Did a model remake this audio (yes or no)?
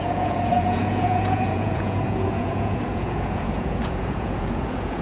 yes